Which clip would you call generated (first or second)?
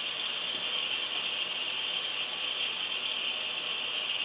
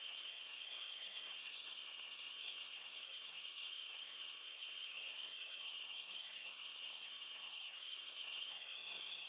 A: second